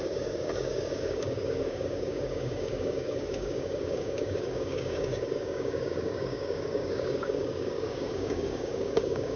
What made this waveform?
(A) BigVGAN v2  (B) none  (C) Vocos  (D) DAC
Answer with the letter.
D